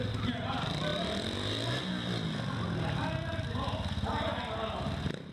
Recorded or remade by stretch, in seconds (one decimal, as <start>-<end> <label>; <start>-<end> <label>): 0.0-5.3 recorded